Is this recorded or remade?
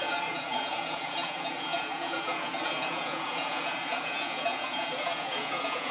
remade